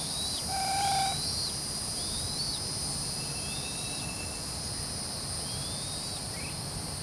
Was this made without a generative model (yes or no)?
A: no